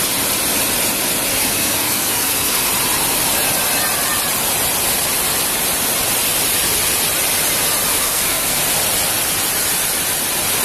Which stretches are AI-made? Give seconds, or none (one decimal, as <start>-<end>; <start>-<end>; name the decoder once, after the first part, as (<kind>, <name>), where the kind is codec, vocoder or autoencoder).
1.3-2.7 (codec, SNAC); 7.9-8.6